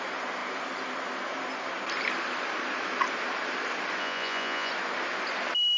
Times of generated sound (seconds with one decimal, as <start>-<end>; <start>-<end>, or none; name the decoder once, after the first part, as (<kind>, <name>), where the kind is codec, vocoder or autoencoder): 4.0-4.7 (vocoder, Vocos)